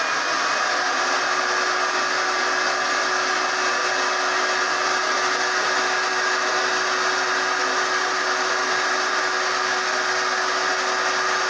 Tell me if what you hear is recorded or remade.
recorded